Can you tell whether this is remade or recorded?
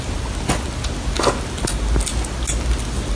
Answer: recorded